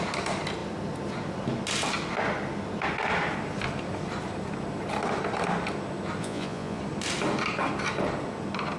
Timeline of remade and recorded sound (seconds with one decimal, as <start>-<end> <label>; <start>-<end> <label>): 0.0-6.2 recorded; 6.2-6.8 remade; 6.8-8.8 recorded